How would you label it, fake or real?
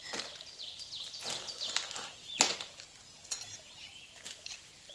real